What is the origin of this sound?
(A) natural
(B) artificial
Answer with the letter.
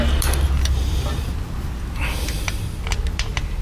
A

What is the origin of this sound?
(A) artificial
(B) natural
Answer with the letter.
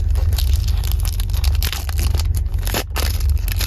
A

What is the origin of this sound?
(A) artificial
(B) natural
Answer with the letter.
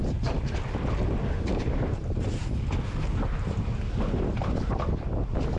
B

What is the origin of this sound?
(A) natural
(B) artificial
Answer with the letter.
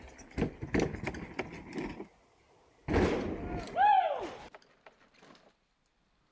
A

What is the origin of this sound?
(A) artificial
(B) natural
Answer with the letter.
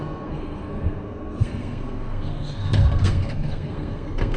A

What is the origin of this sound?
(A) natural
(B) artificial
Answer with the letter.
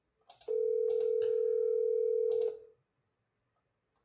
A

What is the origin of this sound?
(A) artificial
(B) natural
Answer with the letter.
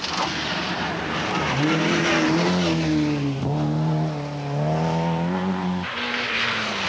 B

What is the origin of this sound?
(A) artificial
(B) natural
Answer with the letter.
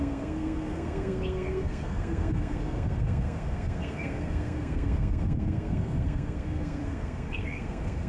A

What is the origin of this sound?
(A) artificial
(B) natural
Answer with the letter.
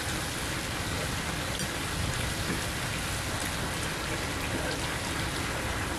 B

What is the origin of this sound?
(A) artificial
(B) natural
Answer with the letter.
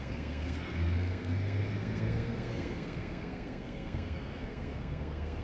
A